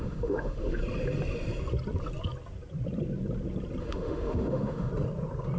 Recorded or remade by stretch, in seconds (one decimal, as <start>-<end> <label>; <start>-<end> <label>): 0.0-0.8 remade; 0.8-3.8 recorded; 3.8-4.9 remade; 4.9-5.6 recorded